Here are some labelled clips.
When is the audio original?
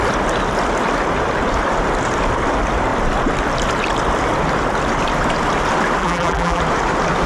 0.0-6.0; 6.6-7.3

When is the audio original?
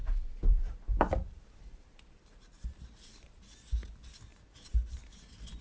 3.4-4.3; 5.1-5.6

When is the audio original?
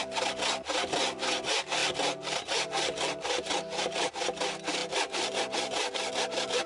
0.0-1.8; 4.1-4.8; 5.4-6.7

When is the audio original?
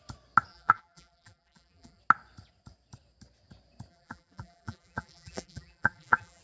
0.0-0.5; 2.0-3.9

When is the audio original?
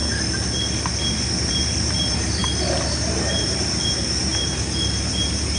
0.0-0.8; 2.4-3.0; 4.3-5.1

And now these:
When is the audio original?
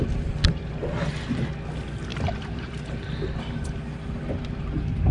0.0-2.1; 2.7-5.1